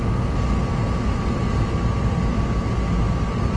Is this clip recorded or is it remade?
recorded